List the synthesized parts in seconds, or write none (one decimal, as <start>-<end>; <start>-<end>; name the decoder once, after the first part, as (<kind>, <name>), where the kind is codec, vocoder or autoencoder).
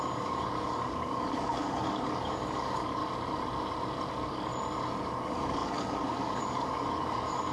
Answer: 0.0-3.0 (codec, DAC); 4.1-4.5; 5.1-7.5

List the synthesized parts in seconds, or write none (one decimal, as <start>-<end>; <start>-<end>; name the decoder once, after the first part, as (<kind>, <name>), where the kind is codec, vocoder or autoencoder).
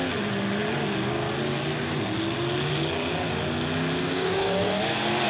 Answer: 4.0-4.8 (codec, DAC)